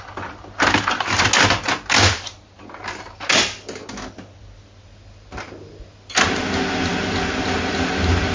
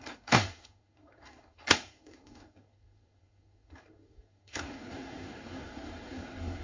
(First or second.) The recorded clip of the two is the first